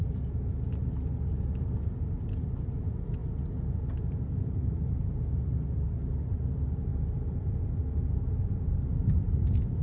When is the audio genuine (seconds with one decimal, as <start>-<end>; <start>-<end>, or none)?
0.0-9.8